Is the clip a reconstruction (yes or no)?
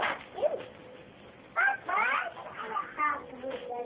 no